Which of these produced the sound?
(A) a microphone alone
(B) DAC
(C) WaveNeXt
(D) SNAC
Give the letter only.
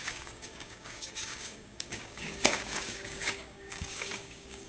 B